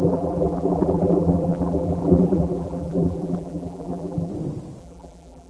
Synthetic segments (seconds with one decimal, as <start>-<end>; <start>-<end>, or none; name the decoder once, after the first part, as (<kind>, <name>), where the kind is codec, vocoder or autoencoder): 0.0-4.3 (vocoder, BigVGAN v2); 4.8-5.5